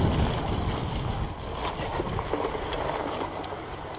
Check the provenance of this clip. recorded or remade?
recorded